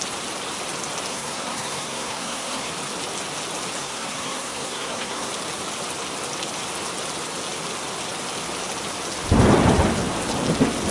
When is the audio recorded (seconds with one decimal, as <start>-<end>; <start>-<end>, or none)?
0.0-1.1; 2.7-3.8; 5.3-10.9